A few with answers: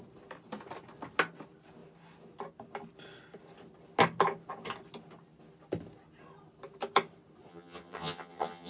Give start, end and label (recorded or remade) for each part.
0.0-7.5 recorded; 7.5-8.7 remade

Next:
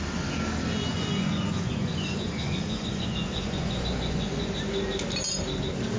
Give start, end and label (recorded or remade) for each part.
0.0-0.9 recorded; 0.9-4.5 remade; 4.5-6.0 recorded